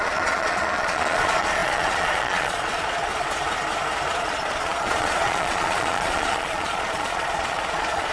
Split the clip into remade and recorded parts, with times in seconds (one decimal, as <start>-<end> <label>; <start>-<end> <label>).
0.0-3.1 remade; 3.1-4.1 recorded; 4.1-8.1 remade